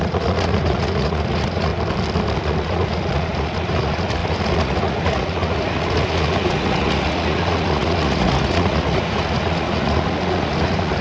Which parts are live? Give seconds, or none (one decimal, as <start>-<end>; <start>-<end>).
1.7-2.4